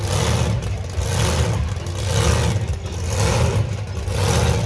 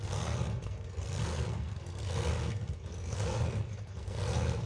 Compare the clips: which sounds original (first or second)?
first